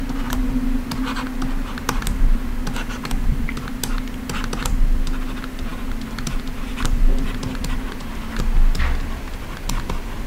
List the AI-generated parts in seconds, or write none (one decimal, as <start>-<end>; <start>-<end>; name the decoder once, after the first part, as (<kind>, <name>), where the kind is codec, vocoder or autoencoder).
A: none